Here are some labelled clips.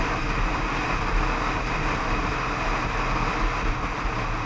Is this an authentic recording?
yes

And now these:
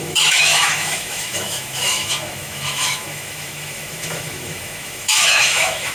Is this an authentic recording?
no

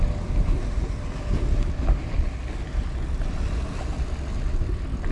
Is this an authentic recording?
yes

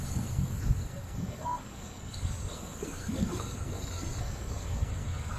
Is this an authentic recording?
no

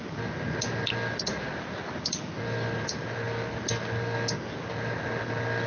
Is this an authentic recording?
yes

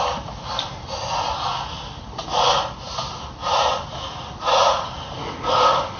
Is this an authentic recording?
yes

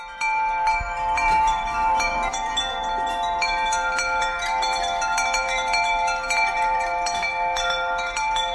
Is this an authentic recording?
no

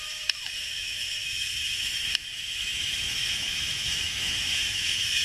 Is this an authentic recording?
no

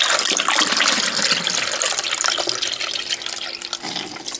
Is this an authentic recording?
yes